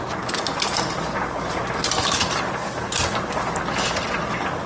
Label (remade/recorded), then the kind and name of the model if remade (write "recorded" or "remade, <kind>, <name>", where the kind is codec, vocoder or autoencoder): recorded